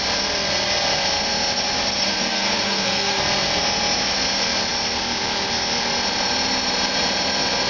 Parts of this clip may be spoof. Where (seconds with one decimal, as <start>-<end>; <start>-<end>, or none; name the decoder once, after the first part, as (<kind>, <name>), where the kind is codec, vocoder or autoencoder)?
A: 2.0-3.2 (codec, SNAC)